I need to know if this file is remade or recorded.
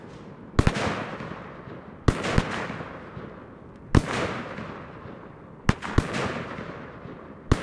recorded